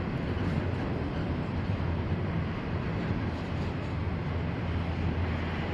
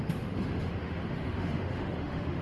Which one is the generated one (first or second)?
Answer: second